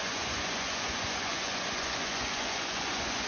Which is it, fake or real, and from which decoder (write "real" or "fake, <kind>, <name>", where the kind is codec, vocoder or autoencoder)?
fake, vocoder, Vocos